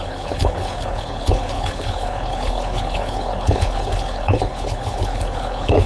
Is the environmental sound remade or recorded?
remade